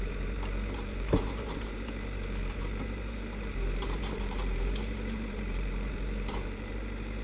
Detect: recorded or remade remade